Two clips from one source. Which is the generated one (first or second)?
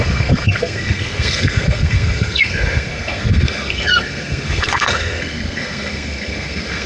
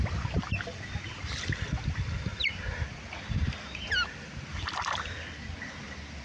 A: first